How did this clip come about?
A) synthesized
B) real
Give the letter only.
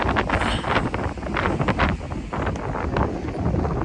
B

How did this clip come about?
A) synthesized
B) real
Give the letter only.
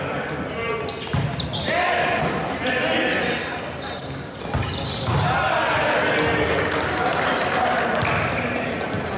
B